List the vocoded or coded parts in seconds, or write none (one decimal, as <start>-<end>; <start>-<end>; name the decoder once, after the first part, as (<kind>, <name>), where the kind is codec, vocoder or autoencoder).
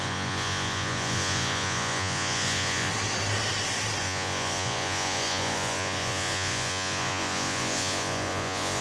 0.0-2.9 (vocoder, Vocos); 4.0-8.8